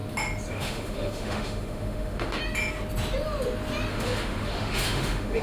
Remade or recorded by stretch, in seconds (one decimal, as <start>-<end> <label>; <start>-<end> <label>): 0.0-0.5 recorded; 0.5-2.4 remade; 2.4-3.9 recorded; 3.9-5.4 remade